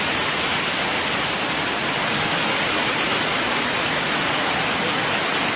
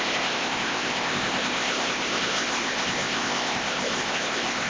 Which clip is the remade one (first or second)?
second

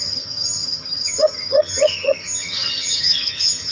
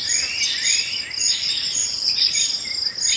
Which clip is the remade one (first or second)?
first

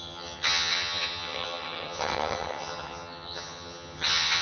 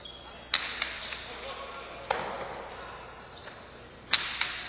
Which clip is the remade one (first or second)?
first